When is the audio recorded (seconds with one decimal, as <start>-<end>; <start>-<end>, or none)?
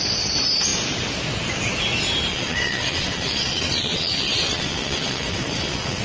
0.0-2.3